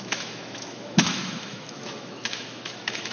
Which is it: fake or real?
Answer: fake